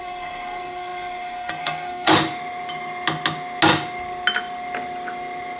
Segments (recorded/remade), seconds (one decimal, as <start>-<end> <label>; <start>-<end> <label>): 0.0-2.1 remade; 2.1-5.6 recorded